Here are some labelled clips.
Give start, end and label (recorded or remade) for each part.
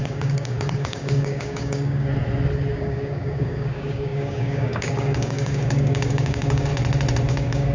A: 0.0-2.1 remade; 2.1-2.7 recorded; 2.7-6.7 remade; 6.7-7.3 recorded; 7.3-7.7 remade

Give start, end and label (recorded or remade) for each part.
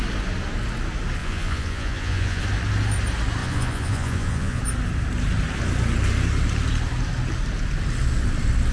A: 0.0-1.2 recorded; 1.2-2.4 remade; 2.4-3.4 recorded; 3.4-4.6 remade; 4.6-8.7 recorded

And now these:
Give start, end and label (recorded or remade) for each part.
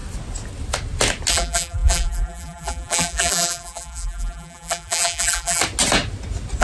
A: 0.0-1.3 recorded; 1.3-5.6 remade; 5.6-6.6 recorded